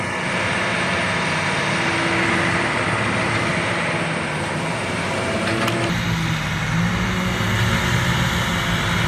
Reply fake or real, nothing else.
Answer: real